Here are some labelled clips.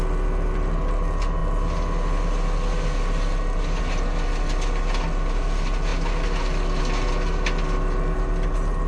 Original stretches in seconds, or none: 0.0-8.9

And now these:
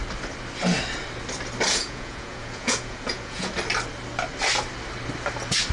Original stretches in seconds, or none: 0.0-1.7; 3.5-5.7

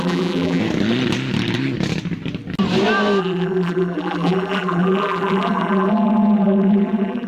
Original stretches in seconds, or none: 0.6-3.2

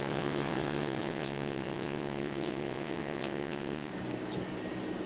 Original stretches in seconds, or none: 3.9-5.1

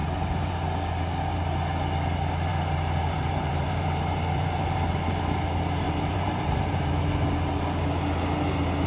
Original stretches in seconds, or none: 0.0-2.5; 6.9-8.9